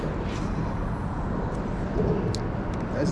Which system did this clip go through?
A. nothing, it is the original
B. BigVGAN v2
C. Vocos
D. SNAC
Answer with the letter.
A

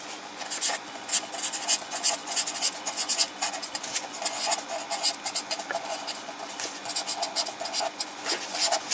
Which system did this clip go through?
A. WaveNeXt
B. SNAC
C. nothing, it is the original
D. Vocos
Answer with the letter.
D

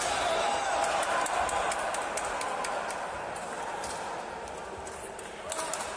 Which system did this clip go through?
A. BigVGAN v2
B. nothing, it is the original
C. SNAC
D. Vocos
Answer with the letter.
B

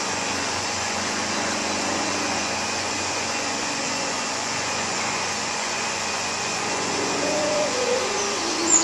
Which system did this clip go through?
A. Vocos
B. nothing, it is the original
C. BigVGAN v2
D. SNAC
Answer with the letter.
A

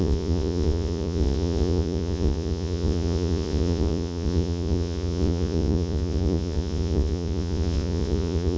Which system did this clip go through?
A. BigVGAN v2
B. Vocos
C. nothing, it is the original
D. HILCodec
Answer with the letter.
B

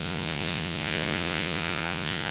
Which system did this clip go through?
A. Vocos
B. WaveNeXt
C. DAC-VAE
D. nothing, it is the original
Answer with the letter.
A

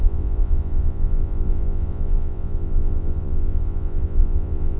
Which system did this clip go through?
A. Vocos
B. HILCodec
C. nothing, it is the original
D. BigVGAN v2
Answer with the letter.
A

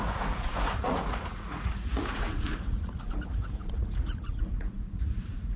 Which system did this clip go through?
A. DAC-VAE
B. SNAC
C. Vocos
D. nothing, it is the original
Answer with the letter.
C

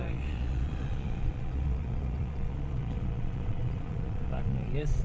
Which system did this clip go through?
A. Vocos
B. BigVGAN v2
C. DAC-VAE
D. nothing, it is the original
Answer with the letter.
A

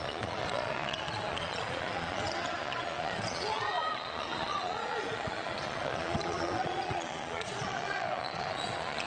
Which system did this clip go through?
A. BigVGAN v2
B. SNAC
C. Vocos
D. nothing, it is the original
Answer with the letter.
C